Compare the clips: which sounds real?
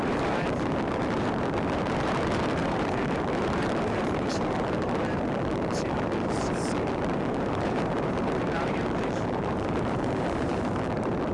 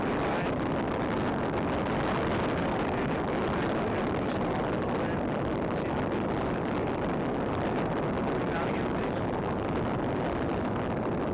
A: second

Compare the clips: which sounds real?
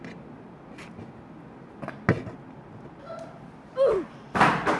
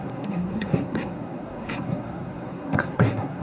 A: first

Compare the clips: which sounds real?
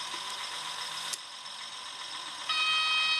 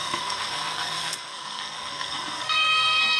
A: first